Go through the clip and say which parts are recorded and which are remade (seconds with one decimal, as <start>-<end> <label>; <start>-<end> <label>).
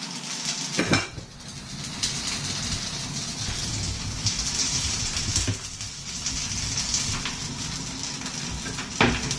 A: 0.0-4.6 recorded; 4.6-5.3 remade; 5.3-9.4 recorded